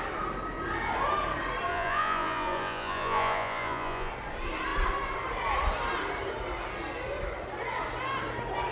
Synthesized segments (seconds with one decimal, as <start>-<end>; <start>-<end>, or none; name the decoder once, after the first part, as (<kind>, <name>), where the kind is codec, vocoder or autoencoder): 1.7-4.1 (vocoder, Vocos)